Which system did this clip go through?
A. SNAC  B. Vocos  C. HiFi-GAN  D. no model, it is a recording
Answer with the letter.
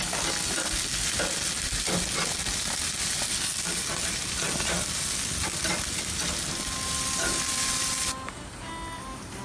D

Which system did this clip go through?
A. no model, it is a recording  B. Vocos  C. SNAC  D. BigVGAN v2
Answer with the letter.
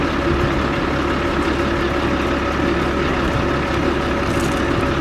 A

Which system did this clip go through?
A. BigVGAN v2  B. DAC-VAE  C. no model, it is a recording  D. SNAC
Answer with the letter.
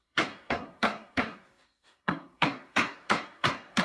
D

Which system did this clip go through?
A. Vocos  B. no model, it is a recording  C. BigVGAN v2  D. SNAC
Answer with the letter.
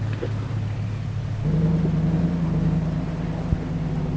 B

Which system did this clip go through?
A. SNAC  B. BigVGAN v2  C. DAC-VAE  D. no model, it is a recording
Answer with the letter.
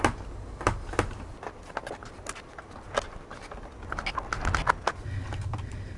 D